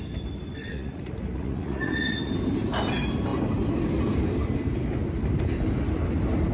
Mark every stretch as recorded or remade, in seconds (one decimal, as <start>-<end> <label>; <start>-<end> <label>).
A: 0.0-0.6 recorded; 0.6-2.3 remade; 2.3-6.5 recorded